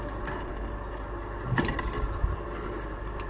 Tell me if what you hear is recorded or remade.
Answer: recorded